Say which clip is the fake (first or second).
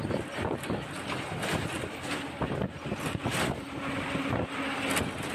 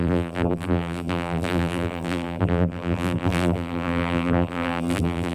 second